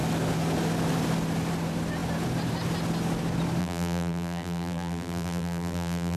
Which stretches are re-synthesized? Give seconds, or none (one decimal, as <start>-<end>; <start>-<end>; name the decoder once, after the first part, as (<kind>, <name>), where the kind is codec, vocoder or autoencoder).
3.6-6.2 (vocoder, BigVGAN v2)